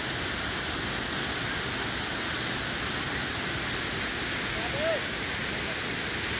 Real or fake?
real